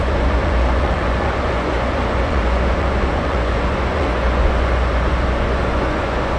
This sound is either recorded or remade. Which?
remade